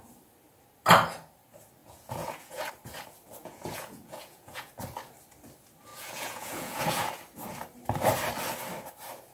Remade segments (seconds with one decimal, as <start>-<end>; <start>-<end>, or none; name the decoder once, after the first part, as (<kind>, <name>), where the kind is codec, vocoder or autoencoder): 1.8-2.7 (vocoder, Vocos); 3.4-4.7; 5.9-7.1